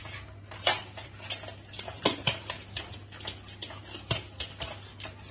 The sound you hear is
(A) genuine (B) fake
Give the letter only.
A